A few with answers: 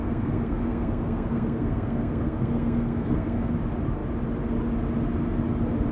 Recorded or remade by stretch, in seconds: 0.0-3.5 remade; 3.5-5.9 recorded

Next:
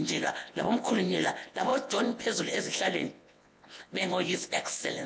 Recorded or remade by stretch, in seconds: 0.0-5.1 remade

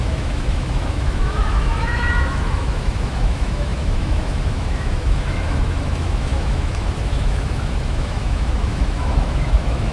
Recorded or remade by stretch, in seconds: 0.0-9.9 remade

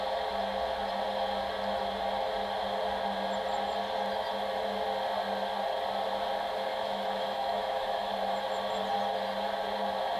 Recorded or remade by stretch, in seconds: 0.0-6.7 recorded; 6.7-8.1 remade; 8.1-10.2 recorded

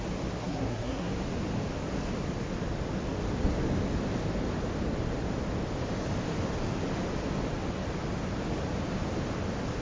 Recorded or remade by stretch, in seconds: 0.0-0.4 recorded; 0.4-1.1 remade; 1.1-9.8 recorded

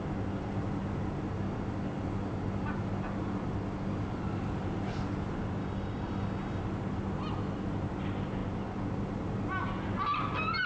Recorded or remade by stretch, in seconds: 0.0-5.6 recorded; 5.6-6.6 remade; 6.6-10.7 recorded

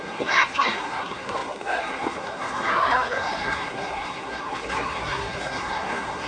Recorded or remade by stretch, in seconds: 0.0-6.3 remade

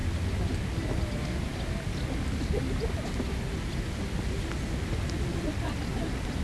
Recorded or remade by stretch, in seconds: 0.0-6.4 recorded